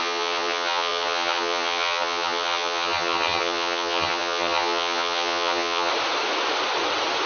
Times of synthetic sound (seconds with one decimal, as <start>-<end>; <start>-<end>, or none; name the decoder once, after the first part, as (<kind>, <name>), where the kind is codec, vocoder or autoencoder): 0.0-5.9 (vocoder, HiFi-GAN)